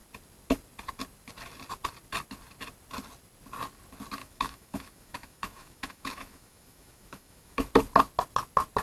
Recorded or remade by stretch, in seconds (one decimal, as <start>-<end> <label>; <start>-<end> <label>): 0.0-4.2 recorded; 4.2-7.7 remade; 7.7-8.8 recorded